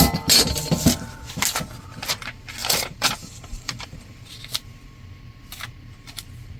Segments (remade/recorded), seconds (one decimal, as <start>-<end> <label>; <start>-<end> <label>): 0.0-2.6 recorded; 2.6-4.3 remade; 4.3-6.6 recorded